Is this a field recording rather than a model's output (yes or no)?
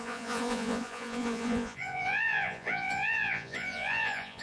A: no